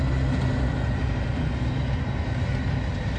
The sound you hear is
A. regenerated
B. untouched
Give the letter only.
B